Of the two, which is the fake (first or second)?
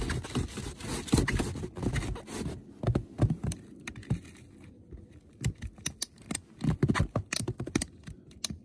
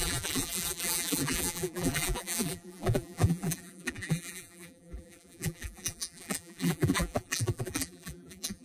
second